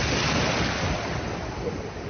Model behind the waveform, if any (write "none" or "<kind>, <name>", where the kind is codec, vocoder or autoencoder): none